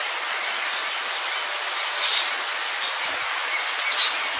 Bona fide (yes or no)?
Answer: yes